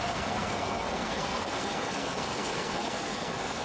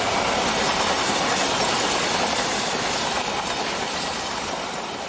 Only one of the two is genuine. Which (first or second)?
second